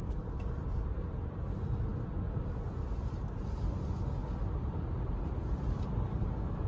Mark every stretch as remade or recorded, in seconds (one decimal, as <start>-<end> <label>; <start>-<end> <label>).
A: 0.0-4.2 recorded; 4.2-5.3 remade; 5.3-6.7 recorded

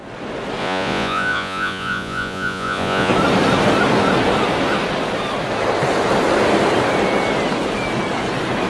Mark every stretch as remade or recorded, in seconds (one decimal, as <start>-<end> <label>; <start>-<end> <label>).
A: 0.0-0.6 recorded; 0.6-3.1 remade; 3.1-8.7 recorded

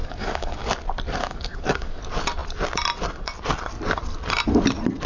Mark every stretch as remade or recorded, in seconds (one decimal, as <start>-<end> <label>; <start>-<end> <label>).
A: 0.0-0.7 remade; 0.7-1.2 recorded; 1.2-2.0 remade; 2.0-5.1 recorded